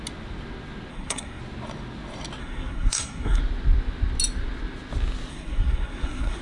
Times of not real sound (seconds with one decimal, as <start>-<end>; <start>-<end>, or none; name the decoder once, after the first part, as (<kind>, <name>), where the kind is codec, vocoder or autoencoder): 0.9-1.4 (codec, SNAC); 2.4-3.4; 5.3-6.4